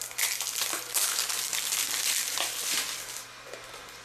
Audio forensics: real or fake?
fake